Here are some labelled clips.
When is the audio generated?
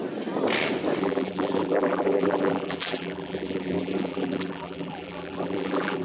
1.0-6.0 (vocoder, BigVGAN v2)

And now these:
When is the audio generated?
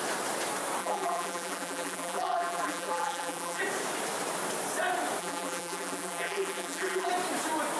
0.8-3.6 (vocoder, BigVGAN v2); 5.2-7.1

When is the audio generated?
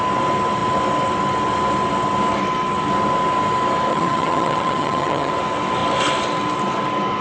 3.9-5.3 (vocoder, HiFi-GAN)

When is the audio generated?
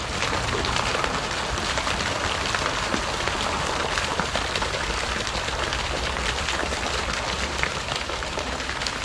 0.0-0.9 (vocoder, BigVGAN v2); 3.5-9.0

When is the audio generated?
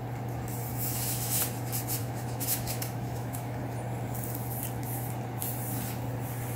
0.7-1.4 (autoencoder, DAC-VAE); 2.0-3.6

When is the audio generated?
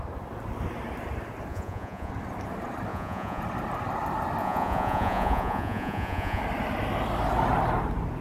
1.5-2.1 (vocoder, Vocos); 2.9-3.4; 4.4-6.4